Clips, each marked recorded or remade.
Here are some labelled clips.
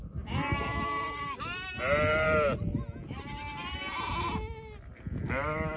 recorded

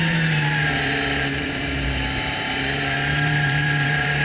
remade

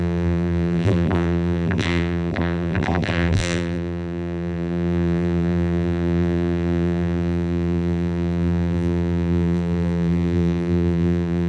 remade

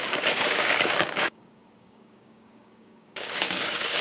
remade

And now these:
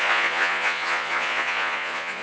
remade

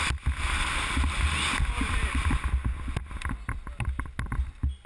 recorded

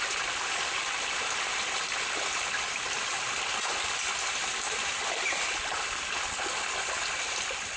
recorded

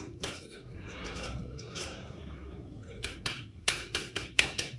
remade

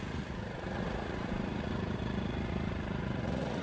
remade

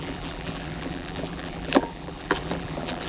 remade